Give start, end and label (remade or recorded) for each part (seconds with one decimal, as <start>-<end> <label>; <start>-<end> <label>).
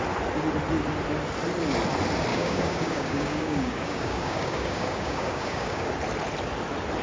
0.0-2.3 recorded; 2.3-5.9 remade; 5.9-7.0 recorded